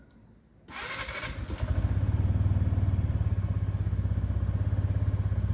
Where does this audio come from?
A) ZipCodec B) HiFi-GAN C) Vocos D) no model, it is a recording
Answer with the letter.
D